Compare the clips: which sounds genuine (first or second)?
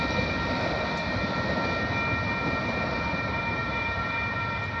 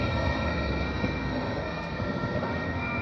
first